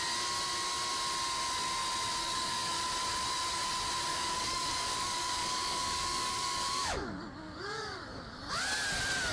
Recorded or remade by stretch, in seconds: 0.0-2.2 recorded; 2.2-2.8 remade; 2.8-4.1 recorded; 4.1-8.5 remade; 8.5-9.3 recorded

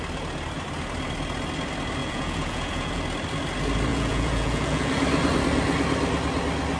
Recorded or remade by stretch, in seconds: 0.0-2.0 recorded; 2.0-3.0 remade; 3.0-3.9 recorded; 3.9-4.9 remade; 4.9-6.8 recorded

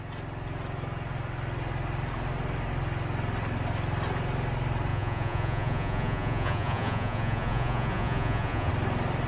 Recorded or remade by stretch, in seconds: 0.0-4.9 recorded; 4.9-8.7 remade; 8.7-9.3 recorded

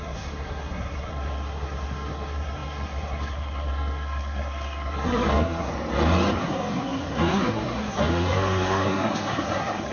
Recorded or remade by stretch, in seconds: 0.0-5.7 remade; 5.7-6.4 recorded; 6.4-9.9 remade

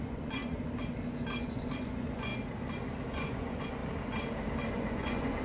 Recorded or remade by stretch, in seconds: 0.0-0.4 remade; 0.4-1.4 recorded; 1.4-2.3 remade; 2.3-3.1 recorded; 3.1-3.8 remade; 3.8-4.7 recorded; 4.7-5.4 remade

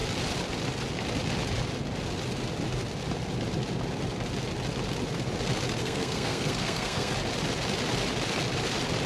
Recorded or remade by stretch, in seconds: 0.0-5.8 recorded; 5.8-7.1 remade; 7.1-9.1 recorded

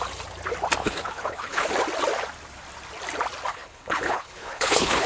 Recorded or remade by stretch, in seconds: 0.0-0.8 recorded; 0.8-1.7 remade; 1.7-3.5 recorded; 3.5-5.1 remade

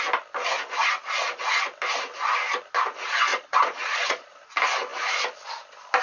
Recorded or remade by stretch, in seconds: 0.0-3.3 recorded; 3.3-4.4 remade; 4.4-6.0 recorded